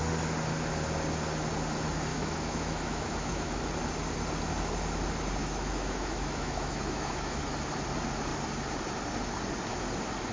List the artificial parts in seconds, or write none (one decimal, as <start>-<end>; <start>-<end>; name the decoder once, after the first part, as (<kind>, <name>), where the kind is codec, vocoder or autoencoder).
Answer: 2.1-3.6 (autoencoder, DAC-VAE); 5.4-7.4